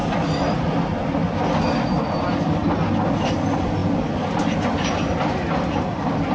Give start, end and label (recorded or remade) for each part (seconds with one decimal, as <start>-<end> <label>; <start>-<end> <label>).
0.0-6.3 recorded